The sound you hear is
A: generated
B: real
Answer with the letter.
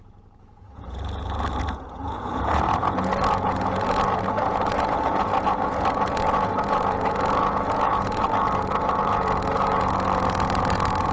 A